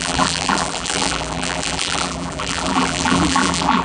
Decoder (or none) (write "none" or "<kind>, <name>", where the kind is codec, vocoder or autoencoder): vocoder, BigVGAN v2